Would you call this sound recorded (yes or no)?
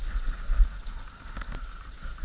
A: yes